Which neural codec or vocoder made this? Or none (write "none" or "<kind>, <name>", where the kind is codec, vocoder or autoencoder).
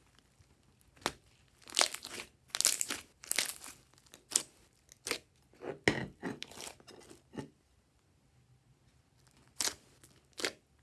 none